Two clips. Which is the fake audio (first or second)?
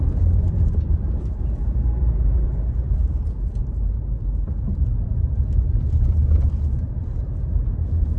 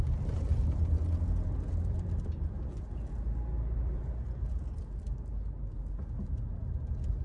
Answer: first